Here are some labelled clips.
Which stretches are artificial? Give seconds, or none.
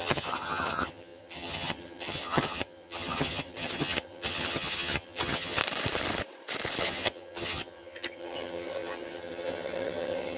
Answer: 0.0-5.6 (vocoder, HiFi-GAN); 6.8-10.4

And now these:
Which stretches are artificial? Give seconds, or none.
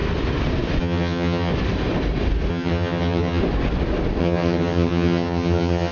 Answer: 0.8-1.5 (vocoder, HiFi-GAN); 2.5-3.4; 4.2-5.9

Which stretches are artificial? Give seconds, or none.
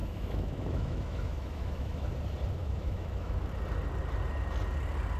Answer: 0.0-2.1 (autoencoder, DAC-VAE); 2.6-3.5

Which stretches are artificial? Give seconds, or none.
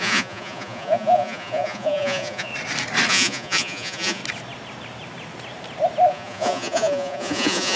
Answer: 0.0-2.5 (vocoder, Vocos); 3.1-4.2; 6.1-7.8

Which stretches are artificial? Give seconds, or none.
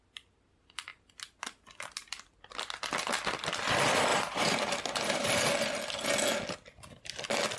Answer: 4.1-5.4 (vocoder, BigVGAN v2)